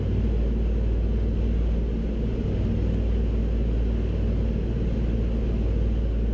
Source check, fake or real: real